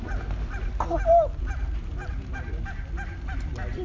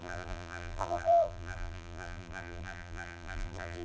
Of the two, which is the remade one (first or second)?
second